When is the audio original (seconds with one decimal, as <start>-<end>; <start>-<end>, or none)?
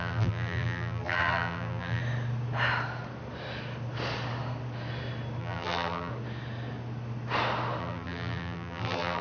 2.0-5.4; 6.1-7.8